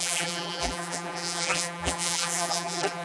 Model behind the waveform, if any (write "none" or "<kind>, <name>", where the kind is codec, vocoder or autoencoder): vocoder, BigVGAN v2